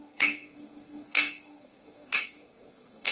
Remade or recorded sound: remade